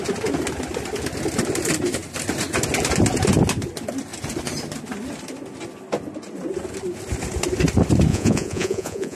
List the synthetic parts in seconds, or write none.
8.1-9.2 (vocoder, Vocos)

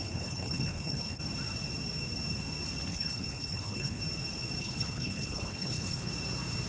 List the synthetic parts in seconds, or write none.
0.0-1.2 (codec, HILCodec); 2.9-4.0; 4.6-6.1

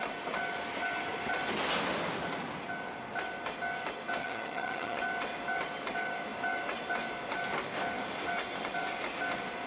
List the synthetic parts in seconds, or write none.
4.2-5.0 (vocoder, HiFi-GAN)

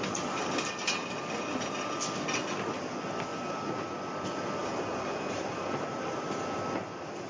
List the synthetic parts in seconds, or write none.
3.3-3.9 (vocoder, BigVGAN v2); 4.6-6.2